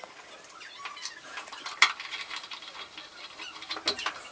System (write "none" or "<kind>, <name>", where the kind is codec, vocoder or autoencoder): none